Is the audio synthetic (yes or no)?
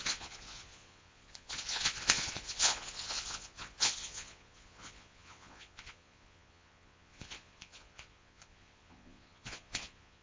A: yes